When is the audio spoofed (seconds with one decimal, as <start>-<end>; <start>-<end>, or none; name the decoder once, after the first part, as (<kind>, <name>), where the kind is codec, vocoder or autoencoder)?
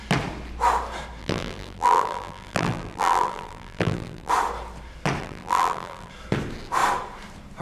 1.2-4.3 (vocoder, BigVGAN v2); 5.2-6.1